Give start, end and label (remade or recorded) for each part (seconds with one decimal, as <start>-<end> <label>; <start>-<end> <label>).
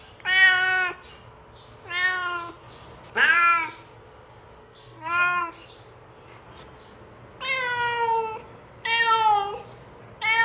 0.0-4.6 recorded; 4.6-5.5 remade; 5.5-10.4 recorded